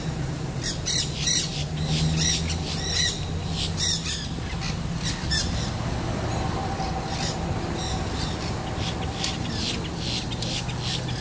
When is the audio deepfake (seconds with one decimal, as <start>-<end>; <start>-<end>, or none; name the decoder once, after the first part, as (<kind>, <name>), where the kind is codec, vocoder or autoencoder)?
none